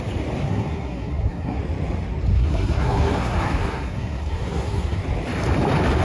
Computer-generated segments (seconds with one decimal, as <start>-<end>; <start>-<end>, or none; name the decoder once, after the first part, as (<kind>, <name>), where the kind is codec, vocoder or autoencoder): 0.4-1.6 (codec, SNAC); 2.3-5.0